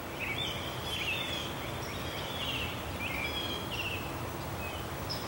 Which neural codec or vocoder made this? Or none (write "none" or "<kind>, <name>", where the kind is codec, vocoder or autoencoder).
none